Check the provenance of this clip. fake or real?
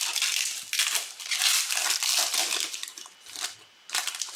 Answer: real